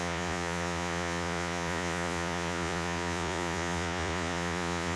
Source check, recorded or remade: remade